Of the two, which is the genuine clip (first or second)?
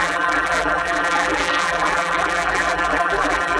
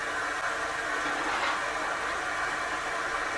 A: second